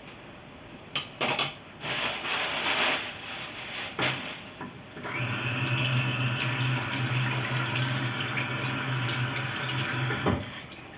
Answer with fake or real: real